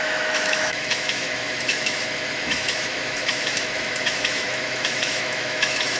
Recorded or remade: remade